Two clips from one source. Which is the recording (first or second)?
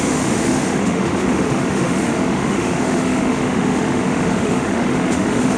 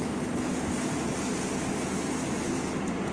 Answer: second